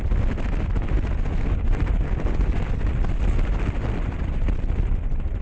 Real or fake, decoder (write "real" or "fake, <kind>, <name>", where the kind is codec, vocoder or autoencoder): real